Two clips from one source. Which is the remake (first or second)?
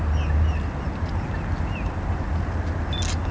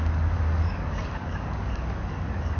second